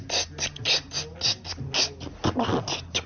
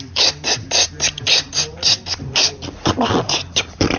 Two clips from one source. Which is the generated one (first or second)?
second